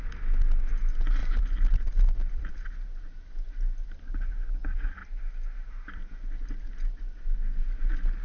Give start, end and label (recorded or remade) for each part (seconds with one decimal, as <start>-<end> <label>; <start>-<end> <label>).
0.0-1.2 recorded; 1.2-2.5 remade; 2.5-5.0 recorded; 5.0-6.1 remade; 6.1-8.2 recorded